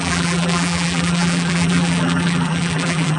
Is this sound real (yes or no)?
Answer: no